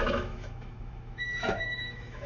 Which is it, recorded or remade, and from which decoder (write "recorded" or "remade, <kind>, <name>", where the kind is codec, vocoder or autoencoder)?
remade, autoencoder, DAC-VAE